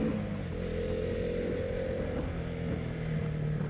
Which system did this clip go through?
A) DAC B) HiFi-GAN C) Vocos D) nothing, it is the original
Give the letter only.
D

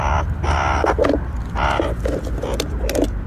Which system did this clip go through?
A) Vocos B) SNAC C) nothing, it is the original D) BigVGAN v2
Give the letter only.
C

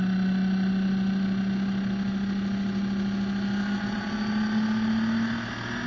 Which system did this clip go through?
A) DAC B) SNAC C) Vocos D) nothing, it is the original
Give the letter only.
D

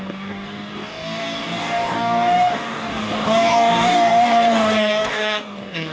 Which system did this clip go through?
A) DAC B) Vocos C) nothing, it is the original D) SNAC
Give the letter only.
A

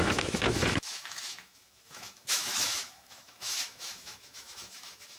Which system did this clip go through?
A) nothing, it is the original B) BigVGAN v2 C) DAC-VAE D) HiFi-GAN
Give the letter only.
C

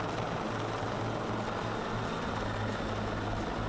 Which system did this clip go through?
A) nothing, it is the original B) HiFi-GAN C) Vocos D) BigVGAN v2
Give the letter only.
A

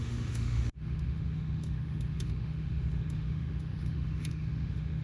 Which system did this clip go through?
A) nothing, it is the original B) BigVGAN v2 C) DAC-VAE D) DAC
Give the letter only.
C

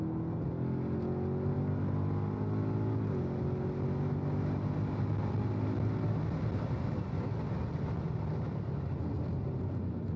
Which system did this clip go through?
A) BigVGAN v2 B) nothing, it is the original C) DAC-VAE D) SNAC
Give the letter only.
B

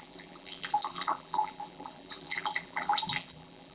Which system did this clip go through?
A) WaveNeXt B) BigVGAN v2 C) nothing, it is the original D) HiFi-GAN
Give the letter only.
B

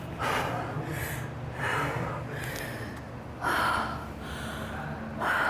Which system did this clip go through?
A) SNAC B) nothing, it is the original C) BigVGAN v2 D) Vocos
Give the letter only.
B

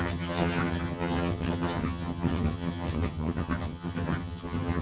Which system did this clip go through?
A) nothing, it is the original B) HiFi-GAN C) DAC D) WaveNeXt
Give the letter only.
B